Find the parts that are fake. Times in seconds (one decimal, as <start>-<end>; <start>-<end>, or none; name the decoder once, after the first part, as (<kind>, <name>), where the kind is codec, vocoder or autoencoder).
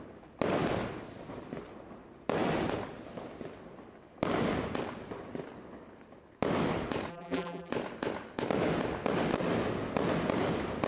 7.1-7.7 (vocoder, BigVGAN v2)